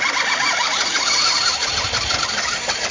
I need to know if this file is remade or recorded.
recorded